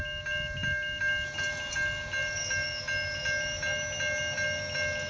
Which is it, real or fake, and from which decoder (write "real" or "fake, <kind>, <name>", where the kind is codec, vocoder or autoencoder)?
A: real